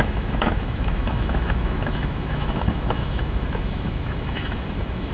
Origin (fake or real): fake